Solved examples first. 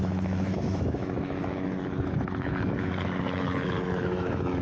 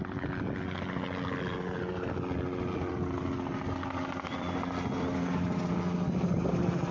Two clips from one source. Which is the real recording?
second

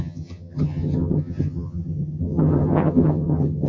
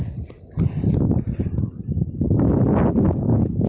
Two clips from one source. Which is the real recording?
second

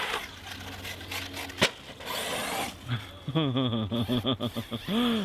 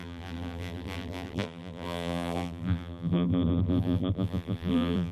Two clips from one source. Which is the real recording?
first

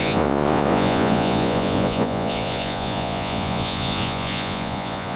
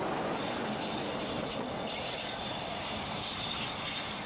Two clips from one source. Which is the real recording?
second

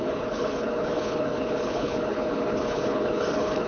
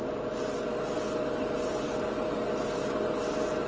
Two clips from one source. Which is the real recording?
second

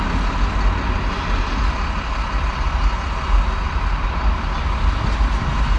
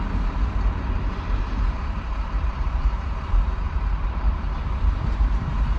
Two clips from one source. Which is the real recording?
first